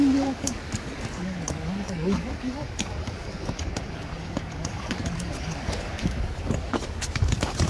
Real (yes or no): no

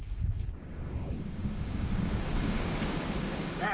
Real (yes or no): no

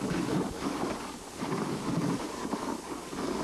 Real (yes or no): no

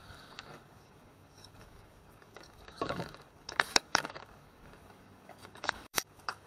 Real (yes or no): no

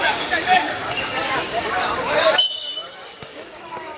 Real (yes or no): no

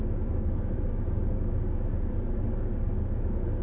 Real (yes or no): no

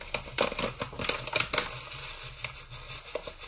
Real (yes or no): yes